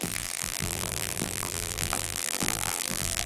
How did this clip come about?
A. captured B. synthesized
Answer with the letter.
B